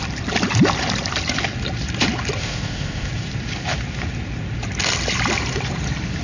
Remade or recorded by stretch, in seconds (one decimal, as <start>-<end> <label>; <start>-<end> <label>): 0.0-2.4 recorded; 2.4-3.1 remade; 3.1-6.2 recorded

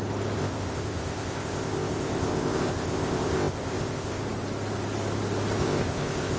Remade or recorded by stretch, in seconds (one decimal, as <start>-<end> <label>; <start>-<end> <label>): 0.0-0.4 recorded; 0.4-4.2 remade; 4.2-5.6 recorded; 5.6-6.4 remade

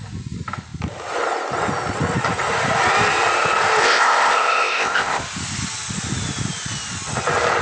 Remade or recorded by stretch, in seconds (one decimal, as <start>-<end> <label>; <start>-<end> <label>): 0.0-3.8 recorded; 3.8-5.2 remade; 5.2-7.6 recorded

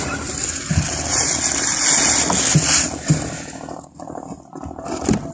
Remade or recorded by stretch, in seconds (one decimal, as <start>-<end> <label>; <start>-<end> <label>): 0.0-5.3 recorded